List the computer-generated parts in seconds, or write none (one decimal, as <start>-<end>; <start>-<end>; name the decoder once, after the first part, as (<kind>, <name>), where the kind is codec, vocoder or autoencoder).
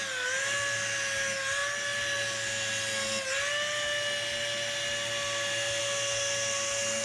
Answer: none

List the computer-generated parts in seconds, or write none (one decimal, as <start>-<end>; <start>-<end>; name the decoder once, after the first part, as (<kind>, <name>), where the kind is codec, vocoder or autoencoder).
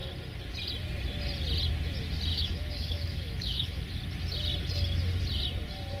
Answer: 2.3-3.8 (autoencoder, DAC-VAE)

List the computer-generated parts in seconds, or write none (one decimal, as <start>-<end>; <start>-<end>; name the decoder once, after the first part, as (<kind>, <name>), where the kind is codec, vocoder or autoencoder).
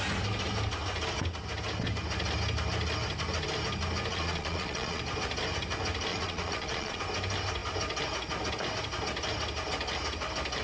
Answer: 4.1-5.0 (vocoder, Vocos); 6.1-7.0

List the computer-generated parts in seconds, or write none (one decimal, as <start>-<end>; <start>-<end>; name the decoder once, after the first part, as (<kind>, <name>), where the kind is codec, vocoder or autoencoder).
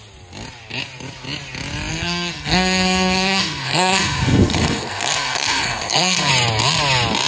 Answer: 1.9-6.3 (codec, SNAC)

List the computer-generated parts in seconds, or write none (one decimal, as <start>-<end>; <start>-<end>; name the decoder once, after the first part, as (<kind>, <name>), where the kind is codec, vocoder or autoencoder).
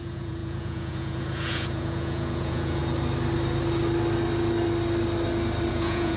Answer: 0.0-2.8 (vocoder, Vocos); 5.7-6.2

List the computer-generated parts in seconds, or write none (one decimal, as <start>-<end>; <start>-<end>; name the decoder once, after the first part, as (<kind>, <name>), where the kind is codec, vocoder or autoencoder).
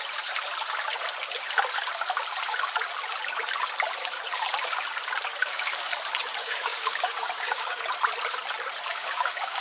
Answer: 5.4-5.9 (codec, DAC); 6.4-7.8; 8.9-9.6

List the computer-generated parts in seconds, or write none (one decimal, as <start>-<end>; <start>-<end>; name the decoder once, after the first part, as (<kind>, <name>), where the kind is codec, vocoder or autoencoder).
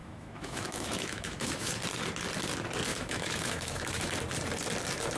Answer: 0.0-1.8 (autoencoder, DAC-VAE); 2.9-4.1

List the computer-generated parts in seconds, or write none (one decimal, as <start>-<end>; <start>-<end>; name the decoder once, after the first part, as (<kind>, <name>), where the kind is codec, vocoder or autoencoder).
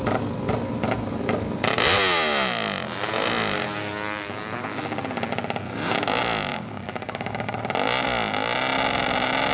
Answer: 6.5-7.6 (codec, DAC)